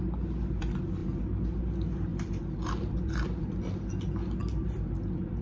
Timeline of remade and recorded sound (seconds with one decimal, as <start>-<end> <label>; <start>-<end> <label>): 0.0-2.1 recorded; 2.1-3.6 remade; 3.6-4.4 recorded; 4.4-5.4 remade